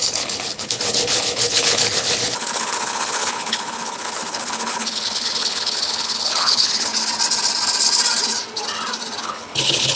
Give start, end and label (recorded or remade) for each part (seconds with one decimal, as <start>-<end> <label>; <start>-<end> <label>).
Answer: 0.0-6.9 remade; 6.9-9.2 recorded; 9.2-10.0 remade